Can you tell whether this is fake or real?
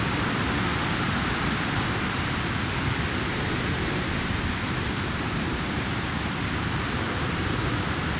fake